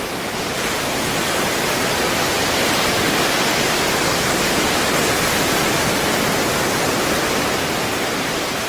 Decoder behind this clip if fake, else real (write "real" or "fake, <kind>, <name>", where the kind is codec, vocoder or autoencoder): real